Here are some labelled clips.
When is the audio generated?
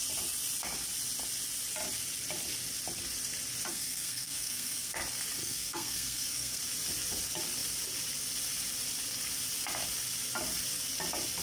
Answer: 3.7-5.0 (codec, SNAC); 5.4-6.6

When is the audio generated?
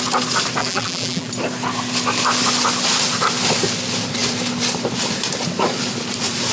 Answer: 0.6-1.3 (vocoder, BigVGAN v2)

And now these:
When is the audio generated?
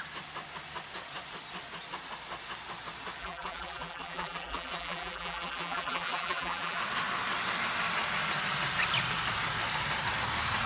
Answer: 3.2-6.8 (vocoder, BigVGAN v2)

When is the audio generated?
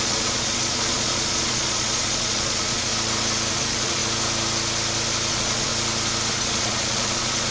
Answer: 0.0-2.9 (vocoder, Vocos); 3.5-4.0; 5.3-5.7; 6.3-7.5